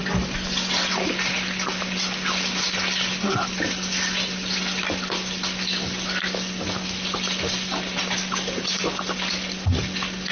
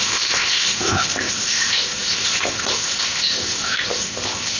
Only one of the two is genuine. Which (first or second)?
first